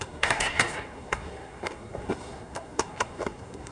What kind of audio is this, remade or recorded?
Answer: remade